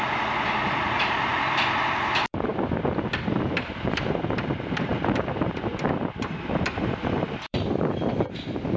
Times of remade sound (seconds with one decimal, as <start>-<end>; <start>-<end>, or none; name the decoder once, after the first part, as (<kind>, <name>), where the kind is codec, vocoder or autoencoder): 0.0-1.3 (vocoder, BigVGAN v2); 1.8-2.5; 3.4-8.8